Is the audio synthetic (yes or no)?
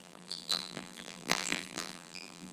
yes